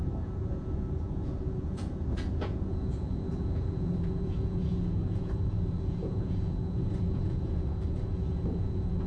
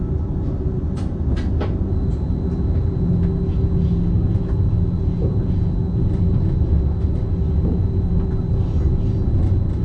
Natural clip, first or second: second